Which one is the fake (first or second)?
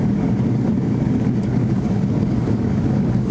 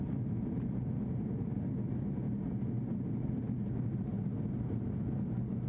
first